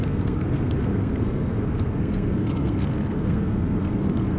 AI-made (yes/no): yes